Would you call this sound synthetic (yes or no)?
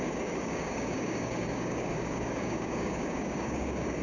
yes